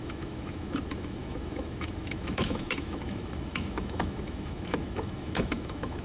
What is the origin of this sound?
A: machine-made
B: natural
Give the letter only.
A